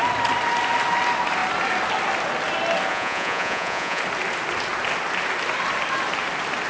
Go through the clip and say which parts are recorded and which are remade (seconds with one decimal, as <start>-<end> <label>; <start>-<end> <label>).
0.0-2.9 recorded; 2.9-4.0 remade; 4.0-6.7 recorded